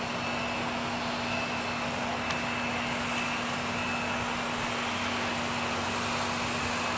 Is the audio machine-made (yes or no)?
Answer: no